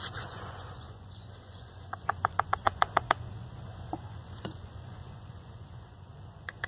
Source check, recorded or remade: remade